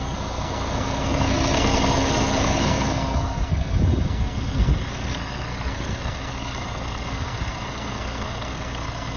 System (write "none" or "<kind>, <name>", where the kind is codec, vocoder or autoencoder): codec, SNAC